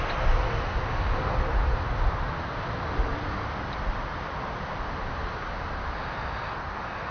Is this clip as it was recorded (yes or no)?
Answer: yes